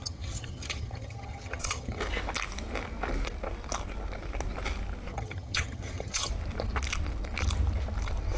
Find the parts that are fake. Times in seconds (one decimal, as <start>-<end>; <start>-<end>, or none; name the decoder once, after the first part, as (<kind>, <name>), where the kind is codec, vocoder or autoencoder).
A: 0.0-2.0 (vocoder, HiFi-GAN); 5.1-6.3